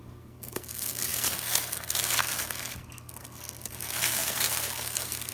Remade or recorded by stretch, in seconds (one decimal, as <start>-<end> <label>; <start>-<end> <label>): 0.0-5.3 remade